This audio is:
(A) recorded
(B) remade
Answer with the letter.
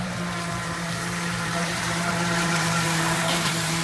B